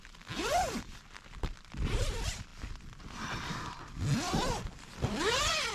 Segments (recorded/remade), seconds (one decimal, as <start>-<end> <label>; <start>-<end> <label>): 0.0-5.7 recorded